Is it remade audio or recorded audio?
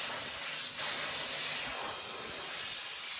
recorded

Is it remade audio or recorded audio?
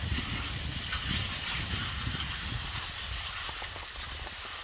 recorded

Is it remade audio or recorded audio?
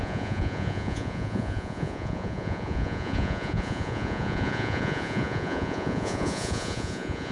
remade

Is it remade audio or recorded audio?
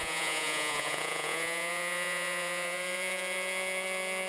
remade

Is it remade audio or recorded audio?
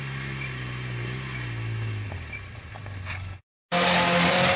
recorded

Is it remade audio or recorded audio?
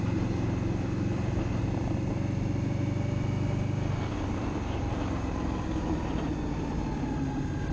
recorded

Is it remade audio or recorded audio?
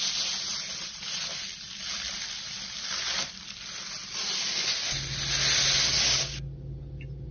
recorded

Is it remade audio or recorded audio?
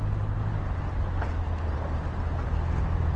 recorded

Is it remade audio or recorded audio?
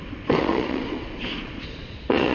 remade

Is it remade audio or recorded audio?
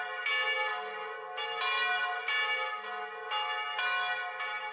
recorded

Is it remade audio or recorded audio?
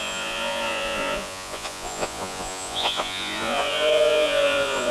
remade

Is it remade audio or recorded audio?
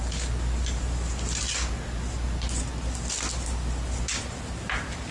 recorded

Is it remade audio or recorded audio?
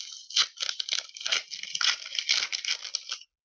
recorded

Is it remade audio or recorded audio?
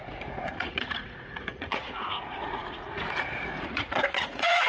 remade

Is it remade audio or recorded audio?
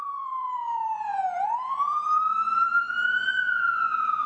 remade